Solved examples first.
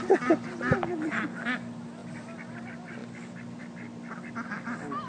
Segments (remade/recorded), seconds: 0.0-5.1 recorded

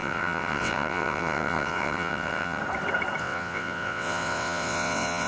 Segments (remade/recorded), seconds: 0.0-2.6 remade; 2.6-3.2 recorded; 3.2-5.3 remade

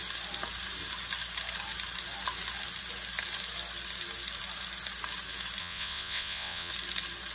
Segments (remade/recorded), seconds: 0.0-5.6 recorded; 5.6-6.7 remade; 6.7-7.3 recorded

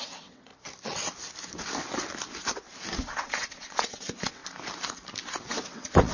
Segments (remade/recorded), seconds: 0.0-0.5 remade; 0.5-3.0 recorded; 3.0-4.4 remade; 4.4-5.5 recorded; 5.5-6.1 remade

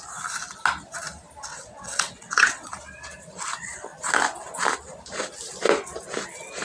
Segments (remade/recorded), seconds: 0.0-1.5 recorded; 1.5-2.7 remade; 2.7-6.6 recorded

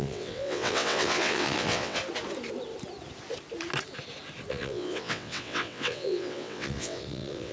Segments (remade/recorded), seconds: 0.0-2.0 remade; 2.0-4.5 recorded; 4.5-7.5 remade

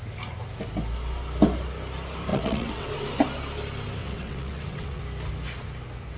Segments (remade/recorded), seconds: 0.0-2.3 recorded; 2.3-2.9 remade; 2.9-4.0 recorded; 4.0-5.0 remade; 5.0-6.2 recorded

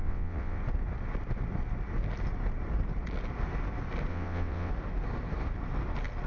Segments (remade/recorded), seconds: 0.0-0.6 remade; 0.6-4.1 recorded; 4.1-4.7 remade; 4.7-6.3 recorded